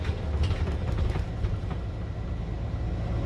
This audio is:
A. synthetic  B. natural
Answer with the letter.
B